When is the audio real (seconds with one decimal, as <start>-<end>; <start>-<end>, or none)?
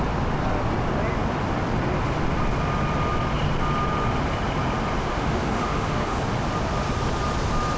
0.0-5.0; 6.2-7.8